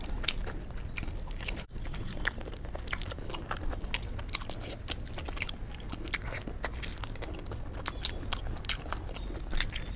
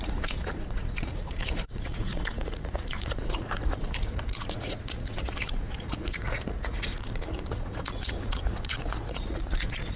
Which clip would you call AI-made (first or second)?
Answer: second